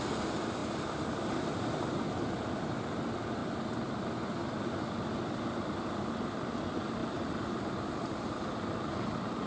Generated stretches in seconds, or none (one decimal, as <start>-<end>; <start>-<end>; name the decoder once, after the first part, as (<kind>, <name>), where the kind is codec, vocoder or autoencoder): 0.6-1.8 (vocoder, BigVGAN v2); 7.0-8.9